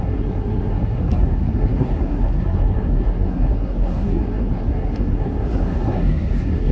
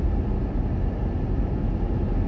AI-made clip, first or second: first